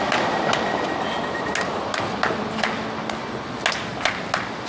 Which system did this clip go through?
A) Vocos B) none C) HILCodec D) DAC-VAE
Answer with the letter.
B